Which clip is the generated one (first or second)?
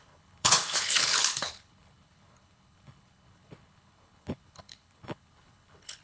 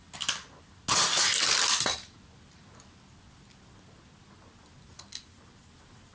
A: first